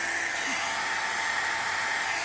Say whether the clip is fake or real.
real